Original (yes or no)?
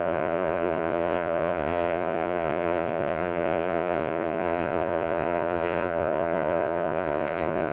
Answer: no